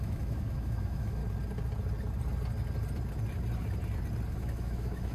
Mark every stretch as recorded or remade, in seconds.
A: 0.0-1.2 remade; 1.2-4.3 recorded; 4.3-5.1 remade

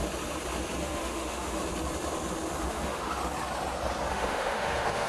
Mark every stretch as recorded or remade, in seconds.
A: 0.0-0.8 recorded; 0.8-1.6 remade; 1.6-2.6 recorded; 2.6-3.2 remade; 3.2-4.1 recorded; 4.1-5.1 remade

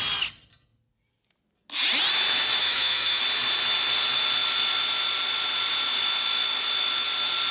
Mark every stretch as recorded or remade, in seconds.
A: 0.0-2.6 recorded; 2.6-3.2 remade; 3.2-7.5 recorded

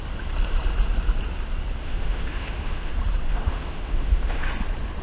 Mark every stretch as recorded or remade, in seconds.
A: 0.0-1.8 recorded; 1.8-2.9 remade; 2.9-3.3 recorded; 3.3-4.5 remade; 4.5-5.0 recorded

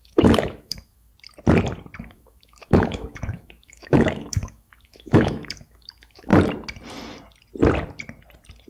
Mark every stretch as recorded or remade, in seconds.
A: 0.0-1.1 remade; 1.1-2.0 recorded; 2.0-6.3 remade; 6.3-8.7 recorded

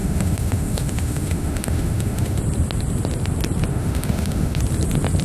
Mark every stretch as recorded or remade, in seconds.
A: 0.0-2.4 remade; 2.4-3.7 recorded; 3.7-4.6 remade; 4.6-5.2 recorded

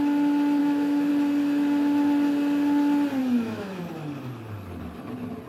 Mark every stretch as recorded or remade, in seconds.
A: 0.0-0.6 recorded; 0.6-1.1 remade; 1.1-3.2 recorded; 3.2-3.8 remade; 3.8-5.5 recorded